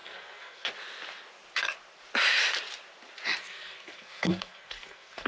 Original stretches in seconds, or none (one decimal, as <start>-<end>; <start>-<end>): 0.7-3.4

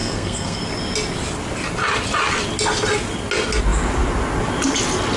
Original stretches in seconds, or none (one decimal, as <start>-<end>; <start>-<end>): 0.6-5.2

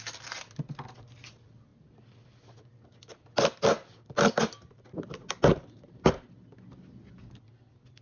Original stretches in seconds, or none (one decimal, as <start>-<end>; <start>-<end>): 0.0-8.0

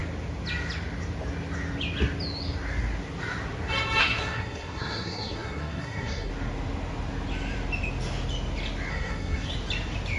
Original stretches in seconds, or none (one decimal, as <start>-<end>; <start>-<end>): 0.0-4.0; 6.3-8.9; 9.5-10.2

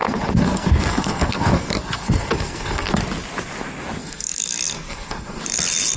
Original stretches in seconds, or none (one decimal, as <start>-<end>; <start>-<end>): 3.0-4.0; 5.4-6.0

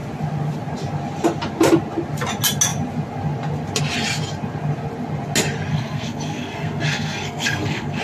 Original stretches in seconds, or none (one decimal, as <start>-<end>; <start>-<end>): 0.0-5.7